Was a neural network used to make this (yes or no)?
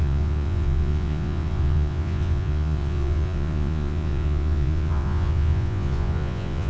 yes